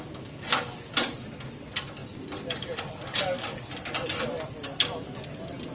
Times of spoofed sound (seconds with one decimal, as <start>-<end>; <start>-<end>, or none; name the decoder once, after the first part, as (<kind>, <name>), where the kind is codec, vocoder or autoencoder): none